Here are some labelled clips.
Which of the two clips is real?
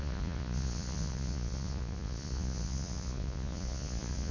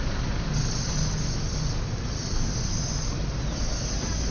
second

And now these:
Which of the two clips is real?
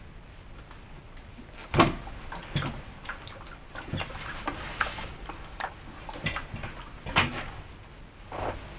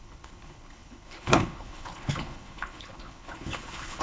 first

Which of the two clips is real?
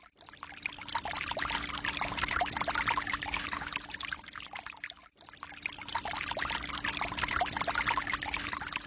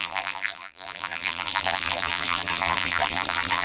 first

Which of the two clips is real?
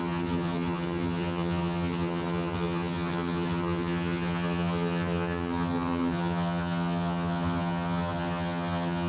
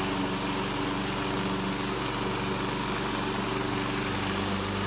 second